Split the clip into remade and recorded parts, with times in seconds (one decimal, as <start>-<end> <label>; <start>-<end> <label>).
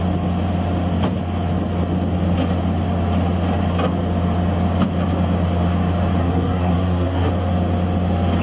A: 0.0-6.2 recorded; 6.2-7.3 remade; 7.3-8.4 recorded